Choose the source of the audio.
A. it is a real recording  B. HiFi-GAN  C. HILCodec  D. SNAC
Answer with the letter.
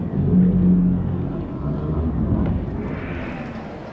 A